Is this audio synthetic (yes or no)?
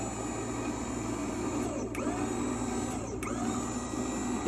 no